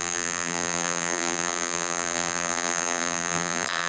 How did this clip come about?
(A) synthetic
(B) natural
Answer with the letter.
A